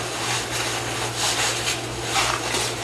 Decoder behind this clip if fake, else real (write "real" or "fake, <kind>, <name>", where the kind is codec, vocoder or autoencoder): real